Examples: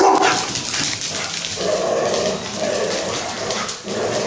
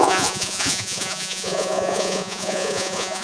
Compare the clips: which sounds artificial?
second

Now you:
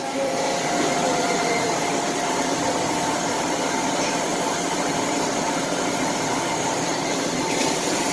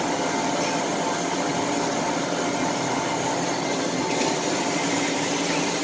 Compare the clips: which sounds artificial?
first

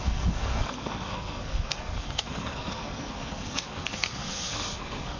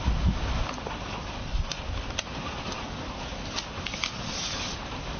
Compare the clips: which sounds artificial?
first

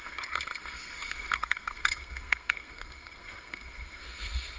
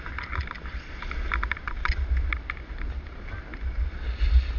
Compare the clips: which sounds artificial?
first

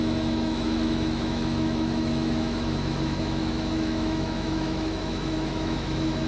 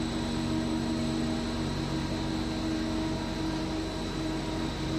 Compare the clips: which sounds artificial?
first